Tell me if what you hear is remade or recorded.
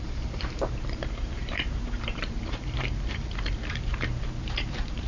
remade